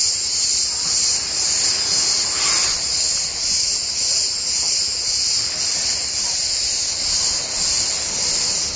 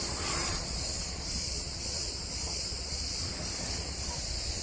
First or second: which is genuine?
first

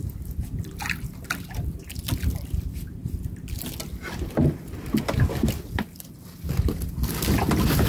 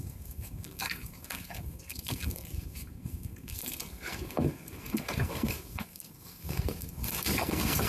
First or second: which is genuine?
first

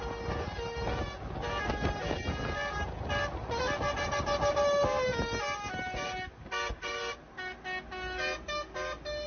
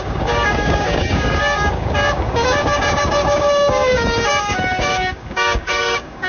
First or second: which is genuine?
first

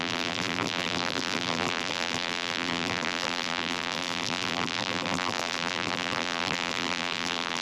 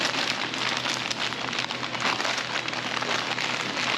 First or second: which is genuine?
second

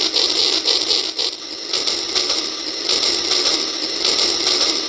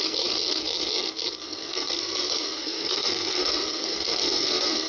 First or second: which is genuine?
first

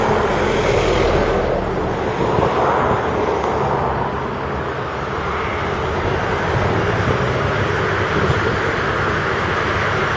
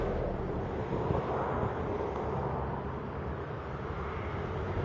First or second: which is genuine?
first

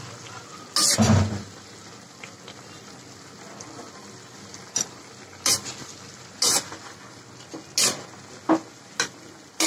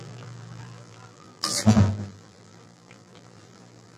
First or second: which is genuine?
first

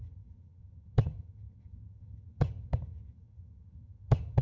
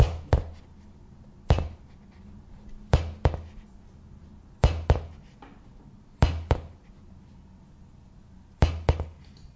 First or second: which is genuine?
second